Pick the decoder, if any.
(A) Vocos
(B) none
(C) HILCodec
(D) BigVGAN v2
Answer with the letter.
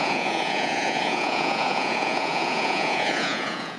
A